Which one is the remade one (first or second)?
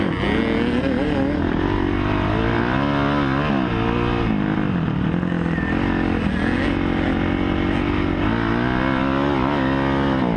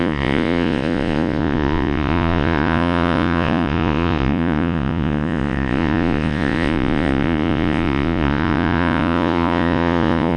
second